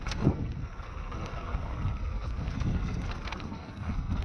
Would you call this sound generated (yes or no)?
yes